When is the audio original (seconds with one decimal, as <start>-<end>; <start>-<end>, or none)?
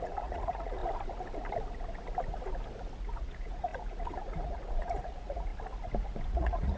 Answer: 0.8-3.0; 5.5-6.3